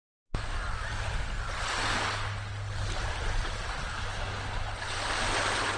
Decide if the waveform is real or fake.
real